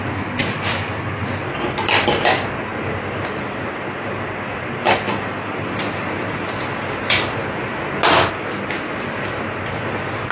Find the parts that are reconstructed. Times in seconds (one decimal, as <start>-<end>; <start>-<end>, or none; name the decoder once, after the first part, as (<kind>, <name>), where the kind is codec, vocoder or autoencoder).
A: none